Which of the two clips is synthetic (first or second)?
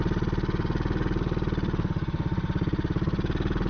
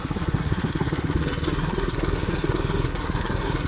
second